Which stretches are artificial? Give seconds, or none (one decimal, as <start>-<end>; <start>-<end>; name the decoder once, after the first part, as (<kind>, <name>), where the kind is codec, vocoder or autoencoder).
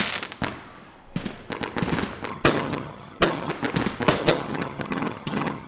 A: 2.3-3.5 (vocoder, HiFi-GAN); 4.2-5.7